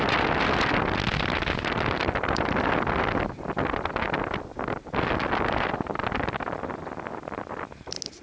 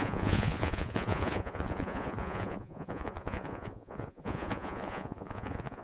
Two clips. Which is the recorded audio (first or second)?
first